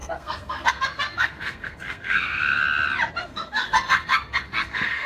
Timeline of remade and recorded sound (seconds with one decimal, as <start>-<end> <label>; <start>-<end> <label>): 0.0-2.6 remade; 2.6-3.1 recorded; 3.1-5.1 remade